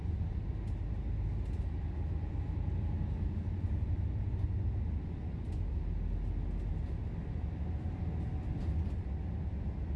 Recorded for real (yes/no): yes